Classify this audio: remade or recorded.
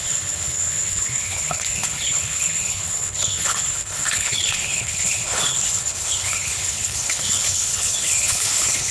remade